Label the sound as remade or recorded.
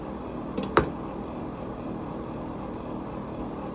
remade